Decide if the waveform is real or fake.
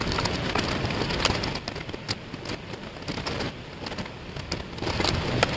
real